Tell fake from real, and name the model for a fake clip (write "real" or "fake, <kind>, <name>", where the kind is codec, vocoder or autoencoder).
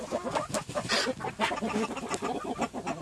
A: real